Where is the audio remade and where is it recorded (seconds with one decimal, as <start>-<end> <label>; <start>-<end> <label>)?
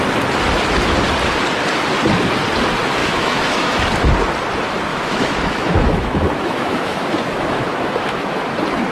0.0-3.0 recorded; 3.0-3.8 remade; 3.8-4.9 recorded; 4.9-8.4 remade; 8.4-8.9 recorded